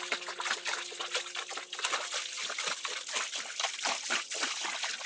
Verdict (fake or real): real